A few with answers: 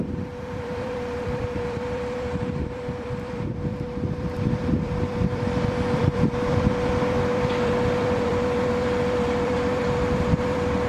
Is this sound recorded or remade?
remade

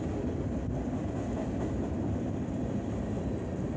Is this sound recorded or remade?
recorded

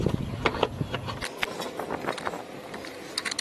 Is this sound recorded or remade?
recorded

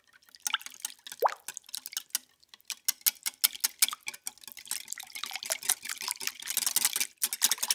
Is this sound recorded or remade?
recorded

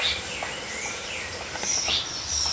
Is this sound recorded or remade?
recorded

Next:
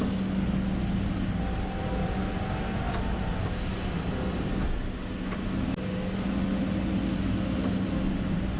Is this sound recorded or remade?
recorded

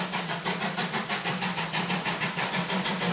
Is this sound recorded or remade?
remade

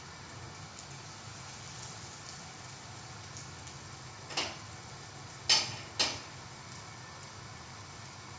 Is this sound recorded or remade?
recorded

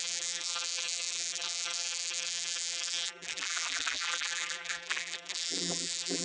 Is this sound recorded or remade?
remade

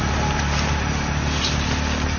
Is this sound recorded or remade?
recorded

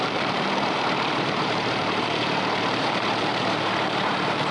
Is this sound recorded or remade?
remade